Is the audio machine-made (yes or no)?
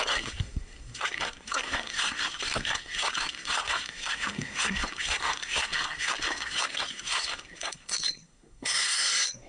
yes